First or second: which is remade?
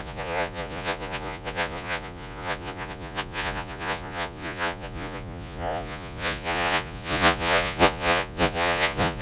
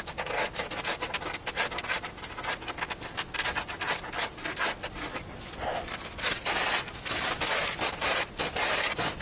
first